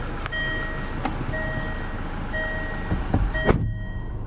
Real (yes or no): yes